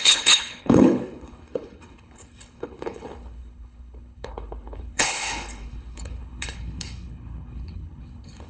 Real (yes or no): no